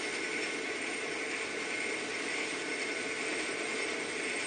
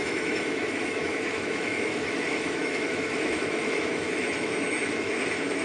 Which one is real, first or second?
first